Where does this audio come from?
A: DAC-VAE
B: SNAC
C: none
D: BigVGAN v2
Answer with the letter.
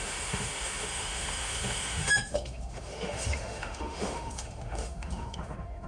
A